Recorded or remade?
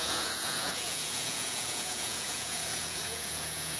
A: remade